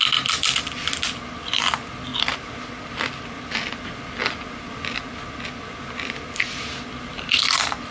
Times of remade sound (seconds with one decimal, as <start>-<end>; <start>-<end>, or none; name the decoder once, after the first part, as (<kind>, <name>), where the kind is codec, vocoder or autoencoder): none